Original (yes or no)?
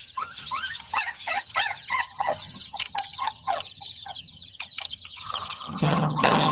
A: no